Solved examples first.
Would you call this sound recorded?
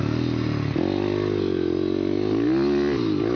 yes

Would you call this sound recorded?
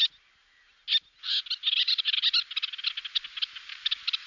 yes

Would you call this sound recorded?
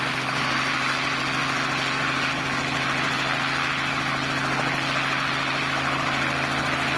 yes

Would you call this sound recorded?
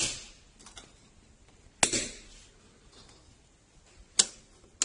yes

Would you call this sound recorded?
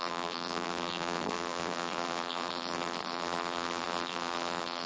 no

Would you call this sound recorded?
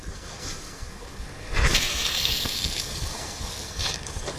no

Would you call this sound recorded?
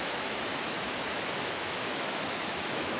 no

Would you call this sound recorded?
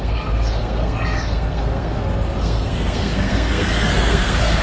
no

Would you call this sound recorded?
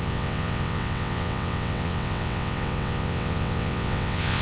no